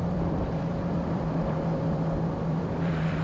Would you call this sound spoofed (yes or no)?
yes